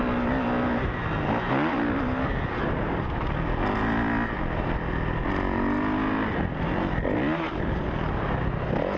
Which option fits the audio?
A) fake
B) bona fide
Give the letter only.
B